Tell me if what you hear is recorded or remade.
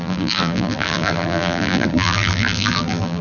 remade